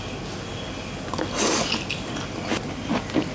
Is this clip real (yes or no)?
yes